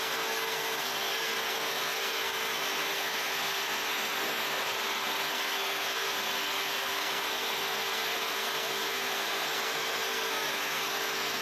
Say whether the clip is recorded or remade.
remade